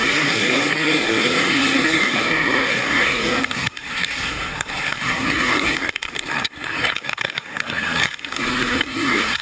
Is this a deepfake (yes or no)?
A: yes